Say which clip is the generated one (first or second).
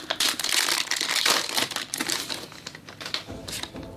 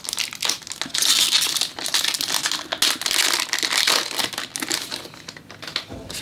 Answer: first